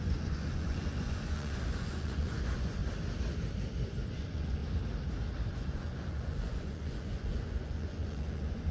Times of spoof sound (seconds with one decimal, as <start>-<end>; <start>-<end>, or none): 0.0-2.8; 4.1-4.6; 5.5-8.7

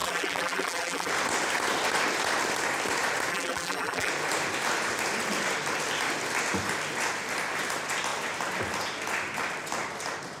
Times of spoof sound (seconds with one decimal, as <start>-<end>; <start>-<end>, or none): 0.0-1.1; 3.3-4.1

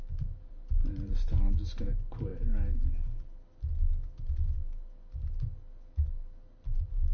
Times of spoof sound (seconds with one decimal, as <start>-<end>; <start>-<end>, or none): 0.0-2.3; 6.6-7.1

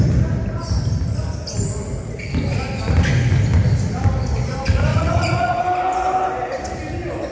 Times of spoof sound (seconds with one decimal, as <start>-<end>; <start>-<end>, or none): 4.9-5.6

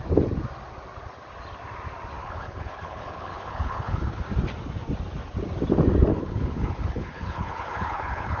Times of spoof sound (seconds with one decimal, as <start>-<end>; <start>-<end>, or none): 2.2-4.2; 6.1-8.4

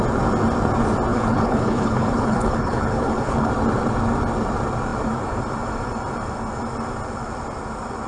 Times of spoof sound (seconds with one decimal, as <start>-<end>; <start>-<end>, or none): 1.1-3.5

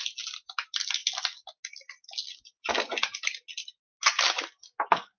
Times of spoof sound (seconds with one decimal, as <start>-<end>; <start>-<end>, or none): none

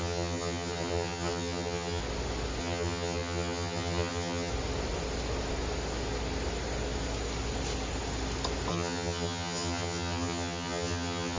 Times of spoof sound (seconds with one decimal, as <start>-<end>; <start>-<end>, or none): 0.0-2.0; 2.6-4.5; 8.7-11.4